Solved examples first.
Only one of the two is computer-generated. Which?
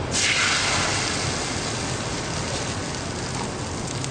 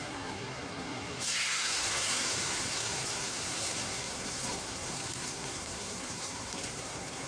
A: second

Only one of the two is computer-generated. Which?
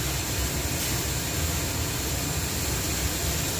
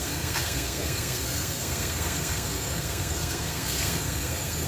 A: second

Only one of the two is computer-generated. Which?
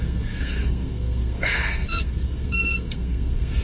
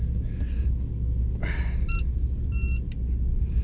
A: first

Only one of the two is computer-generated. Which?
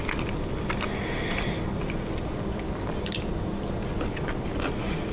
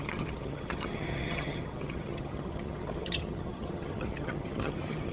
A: second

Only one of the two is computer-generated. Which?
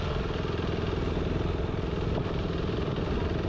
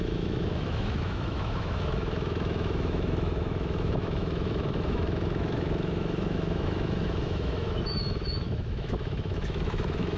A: second